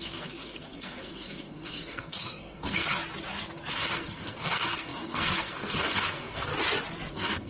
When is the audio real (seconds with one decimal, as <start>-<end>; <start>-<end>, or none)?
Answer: 3.0-3.7; 6.5-7.1